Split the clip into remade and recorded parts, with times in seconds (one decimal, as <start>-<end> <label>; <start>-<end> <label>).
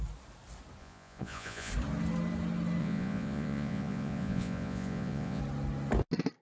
0.0-0.8 recorded; 0.8-1.7 remade; 1.7-2.8 recorded; 2.8-5.4 remade; 5.4-6.4 recorded